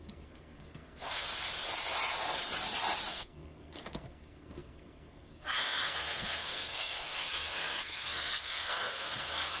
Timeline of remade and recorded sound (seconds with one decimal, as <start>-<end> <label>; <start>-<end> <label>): 0.0-1.3 remade; 1.3-3.1 recorded; 3.1-9.6 remade

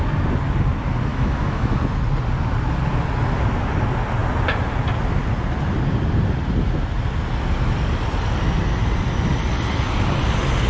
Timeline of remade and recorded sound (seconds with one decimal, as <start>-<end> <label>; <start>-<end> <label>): 0.0-1.1 recorded; 1.1-1.8 remade; 1.8-10.7 recorded

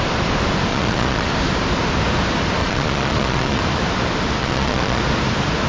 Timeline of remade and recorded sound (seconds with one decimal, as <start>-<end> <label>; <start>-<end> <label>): 0.0-0.7 recorded; 0.7-1.3 remade; 1.3-2.6 recorded; 2.6-3.6 remade; 3.6-4.4 recorded; 4.4-5.0 remade; 5.0-5.7 recorded